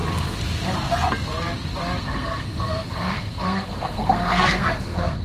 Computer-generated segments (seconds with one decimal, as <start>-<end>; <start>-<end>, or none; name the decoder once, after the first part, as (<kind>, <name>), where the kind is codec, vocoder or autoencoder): 2.0-5.2 (codec, SNAC)